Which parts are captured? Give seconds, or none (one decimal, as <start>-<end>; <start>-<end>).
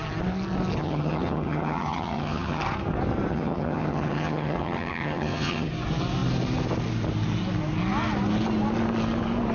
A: 0.0-0.8; 2.6-3.3; 5.7-9.5